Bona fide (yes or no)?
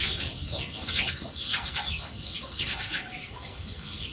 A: no